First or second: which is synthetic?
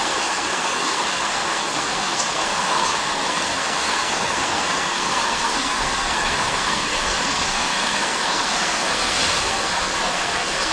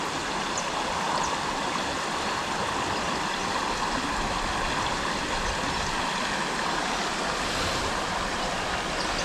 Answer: first